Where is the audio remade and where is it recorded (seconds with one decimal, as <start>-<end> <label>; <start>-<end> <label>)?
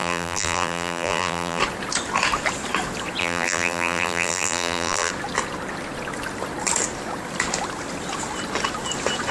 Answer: 0.0-1.6 remade; 1.6-3.2 recorded; 3.2-5.1 remade; 5.1-9.3 recorded